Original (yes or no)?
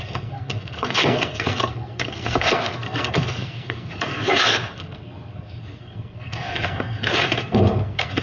no